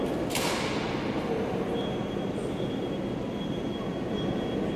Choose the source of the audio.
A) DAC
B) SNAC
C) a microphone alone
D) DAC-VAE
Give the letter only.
C